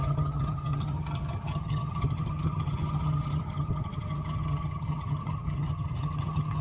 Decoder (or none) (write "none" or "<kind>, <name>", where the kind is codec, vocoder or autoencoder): vocoder, HiFi-GAN